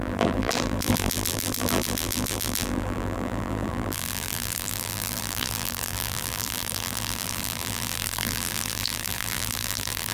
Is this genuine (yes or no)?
no